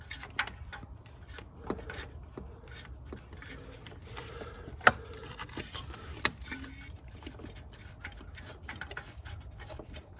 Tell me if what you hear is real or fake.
real